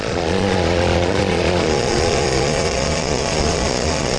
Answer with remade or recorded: remade